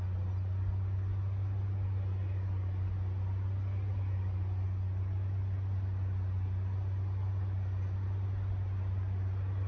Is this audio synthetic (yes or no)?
no